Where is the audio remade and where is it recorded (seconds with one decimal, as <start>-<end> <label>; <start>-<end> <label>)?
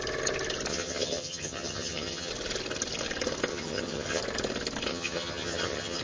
0.0-0.7 recorded; 0.7-2.3 remade; 2.3-3.5 recorded; 3.5-4.2 remade; 4.2-4.9 recorded; 4.9-6.0 remade